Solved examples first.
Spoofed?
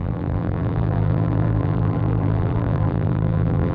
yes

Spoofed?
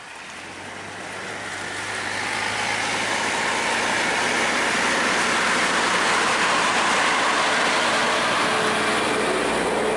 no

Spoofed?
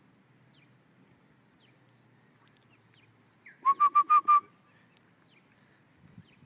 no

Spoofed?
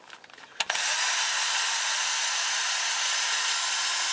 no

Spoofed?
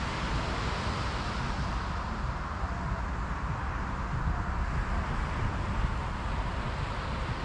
no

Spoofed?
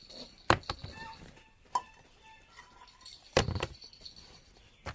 no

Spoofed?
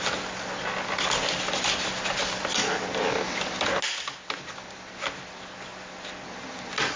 no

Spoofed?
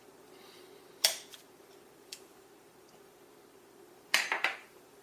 yes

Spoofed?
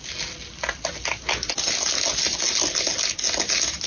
no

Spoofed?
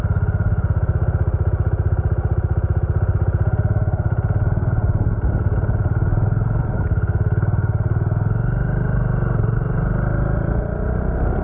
no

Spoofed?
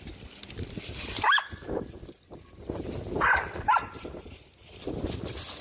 no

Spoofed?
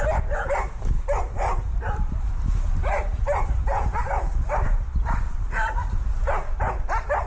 yes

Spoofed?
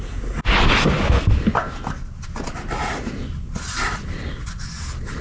no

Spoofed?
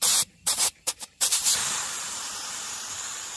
yes